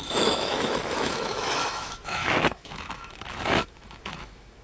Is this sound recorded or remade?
remade